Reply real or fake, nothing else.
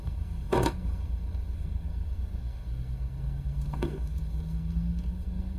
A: fake